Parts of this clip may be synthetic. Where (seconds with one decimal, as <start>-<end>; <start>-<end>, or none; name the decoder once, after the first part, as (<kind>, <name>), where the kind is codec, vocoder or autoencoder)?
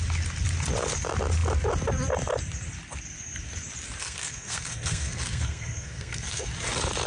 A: 4.0-6.5 (codec, SNAC)